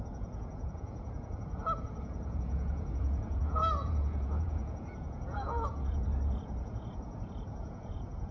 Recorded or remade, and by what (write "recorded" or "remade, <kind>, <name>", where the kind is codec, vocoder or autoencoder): remade, vocoder, Vocos